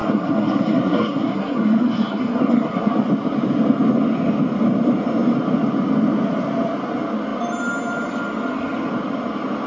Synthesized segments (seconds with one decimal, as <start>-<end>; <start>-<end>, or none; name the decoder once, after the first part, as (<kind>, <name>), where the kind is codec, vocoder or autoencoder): 0.0-2.9 (codec, SNAC)